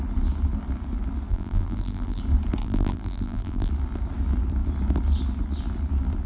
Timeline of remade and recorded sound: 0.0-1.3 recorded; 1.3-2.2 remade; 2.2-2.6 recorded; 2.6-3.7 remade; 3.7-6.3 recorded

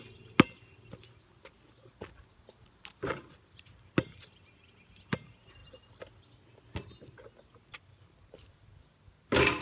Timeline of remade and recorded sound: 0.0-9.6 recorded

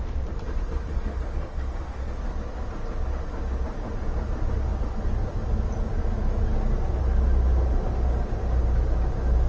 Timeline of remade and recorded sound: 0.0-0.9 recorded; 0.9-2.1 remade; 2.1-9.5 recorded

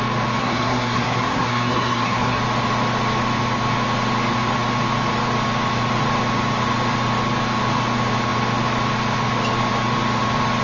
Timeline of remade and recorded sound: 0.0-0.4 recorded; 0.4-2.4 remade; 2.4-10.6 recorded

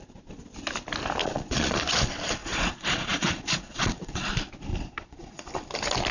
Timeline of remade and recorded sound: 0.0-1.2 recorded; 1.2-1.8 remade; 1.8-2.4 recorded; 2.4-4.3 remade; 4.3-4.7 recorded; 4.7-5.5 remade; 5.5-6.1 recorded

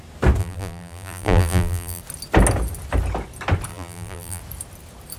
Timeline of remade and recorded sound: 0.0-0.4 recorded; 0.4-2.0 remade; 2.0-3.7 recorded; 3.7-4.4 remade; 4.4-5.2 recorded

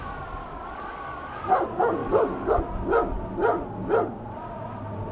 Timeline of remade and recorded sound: 0.0-0.4 recorded; 0.4-1.4 remade; 1.4-2.0 recorded; 2.0-2.6 remade; 2.6-5.1 recorded